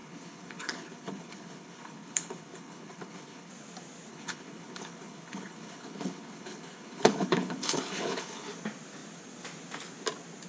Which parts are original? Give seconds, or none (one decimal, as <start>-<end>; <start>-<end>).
3.5-4.1; 8.5-10.5